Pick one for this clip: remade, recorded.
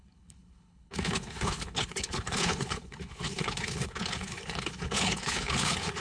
remade